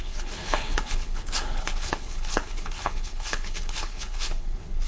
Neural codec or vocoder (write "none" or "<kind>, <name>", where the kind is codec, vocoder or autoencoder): codec, HILCodec